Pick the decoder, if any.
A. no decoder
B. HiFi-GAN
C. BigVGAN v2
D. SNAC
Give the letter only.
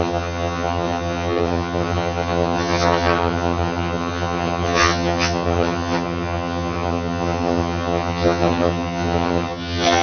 B